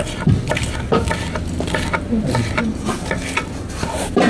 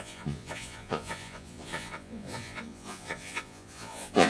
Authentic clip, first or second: first